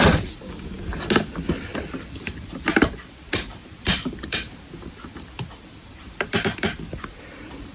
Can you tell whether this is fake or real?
fake